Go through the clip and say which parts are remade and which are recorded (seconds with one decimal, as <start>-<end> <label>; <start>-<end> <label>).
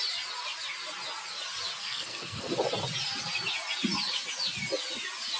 0.0-1.8 recorded; 1.8-2.5 remade; 2.5-5.4 recorded